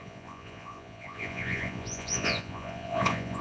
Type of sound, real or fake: fake